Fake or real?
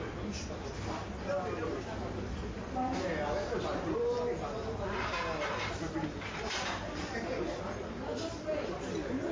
real